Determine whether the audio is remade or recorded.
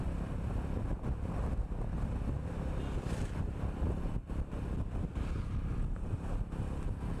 recorded